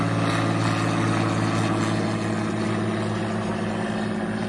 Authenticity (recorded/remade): recorded